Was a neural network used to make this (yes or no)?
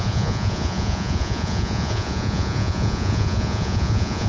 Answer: yes